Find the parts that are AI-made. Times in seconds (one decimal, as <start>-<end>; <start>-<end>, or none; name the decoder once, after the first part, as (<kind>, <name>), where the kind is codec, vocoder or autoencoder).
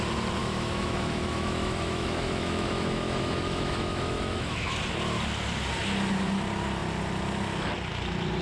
0.4-4.8 (autoencoder, DAC-VAE)